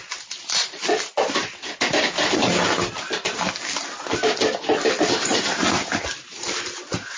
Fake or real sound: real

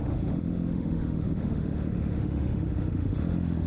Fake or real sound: fake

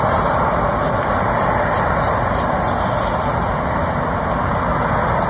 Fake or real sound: real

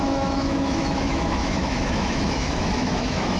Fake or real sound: fake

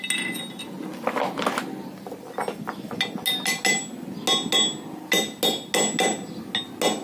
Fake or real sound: real